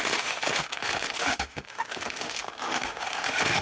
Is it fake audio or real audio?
fake